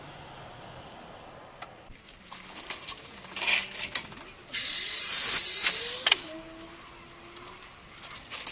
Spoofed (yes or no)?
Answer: no